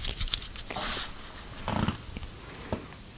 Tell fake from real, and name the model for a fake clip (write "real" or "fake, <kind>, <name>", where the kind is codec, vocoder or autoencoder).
real